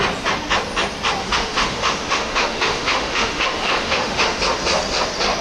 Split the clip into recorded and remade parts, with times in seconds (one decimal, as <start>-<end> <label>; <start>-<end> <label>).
0.0-1.2 recorded; 1.2-4.4 remade; 4.4-5.4 recorded